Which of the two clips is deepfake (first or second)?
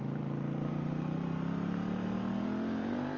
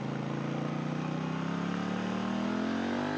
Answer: first